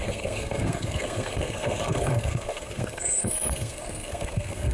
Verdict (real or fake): fake